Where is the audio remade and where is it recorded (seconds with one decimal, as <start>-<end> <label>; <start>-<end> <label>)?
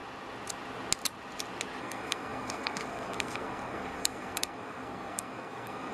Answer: 0.0-1.8 recorded; 1.8-5.9 remade